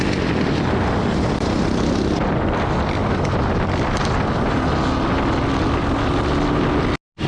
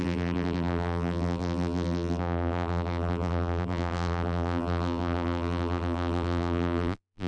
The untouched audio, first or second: first